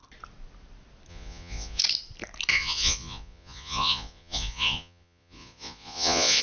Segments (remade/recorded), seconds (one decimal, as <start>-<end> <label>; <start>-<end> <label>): 0.0-1.1 recorded; 1.1-1.8 remade; 1.8-2.5 recorded; 2.5-6.4 remade